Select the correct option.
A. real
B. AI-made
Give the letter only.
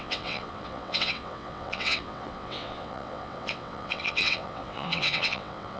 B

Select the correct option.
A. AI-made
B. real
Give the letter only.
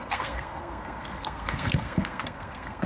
A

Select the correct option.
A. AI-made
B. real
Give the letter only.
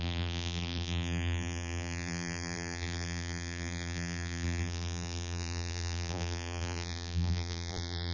A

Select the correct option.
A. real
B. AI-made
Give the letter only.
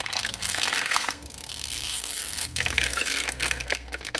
B